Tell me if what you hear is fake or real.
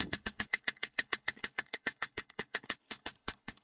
fake